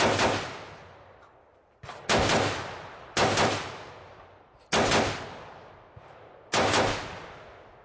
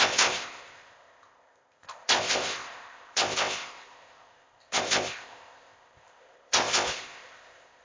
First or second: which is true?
first